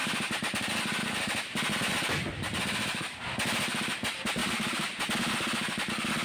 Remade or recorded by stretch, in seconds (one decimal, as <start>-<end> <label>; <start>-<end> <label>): 0.0-1.0 remade; 1.0-4.4 recorded; 4.4-5.0 remade; 5.0-6.2 recorded